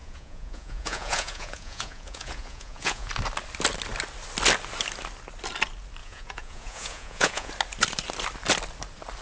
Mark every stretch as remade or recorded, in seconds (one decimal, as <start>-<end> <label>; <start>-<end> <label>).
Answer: 0.0-3.1 remade; 3.1-6.0 recorded; 6.0-7.5 remade; 7.5-9.2 recorded